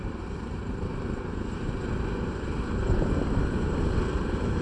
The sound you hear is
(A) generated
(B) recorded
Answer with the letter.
A